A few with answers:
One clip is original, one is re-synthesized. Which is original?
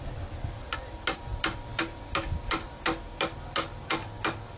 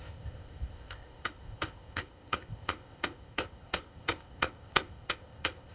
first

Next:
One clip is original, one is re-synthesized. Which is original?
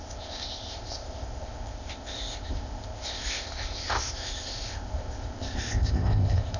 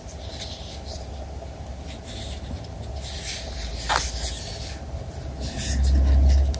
second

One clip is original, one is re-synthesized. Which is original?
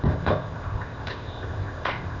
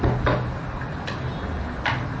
second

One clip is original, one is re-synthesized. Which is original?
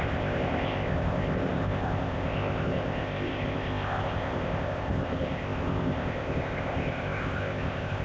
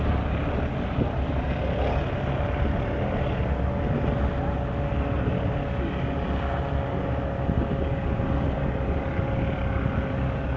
second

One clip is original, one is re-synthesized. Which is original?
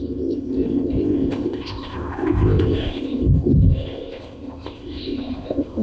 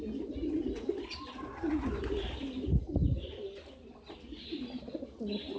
second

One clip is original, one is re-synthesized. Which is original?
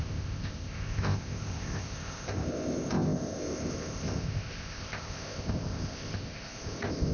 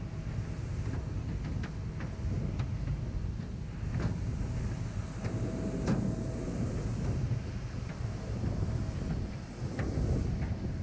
second